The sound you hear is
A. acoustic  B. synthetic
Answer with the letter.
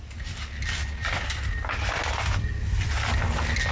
A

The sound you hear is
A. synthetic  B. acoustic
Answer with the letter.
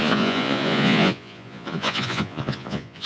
A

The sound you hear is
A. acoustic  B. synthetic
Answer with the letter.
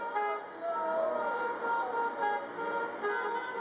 A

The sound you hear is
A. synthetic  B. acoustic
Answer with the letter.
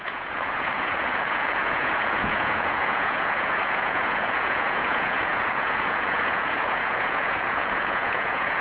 A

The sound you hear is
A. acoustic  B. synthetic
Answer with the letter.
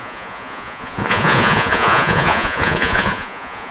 B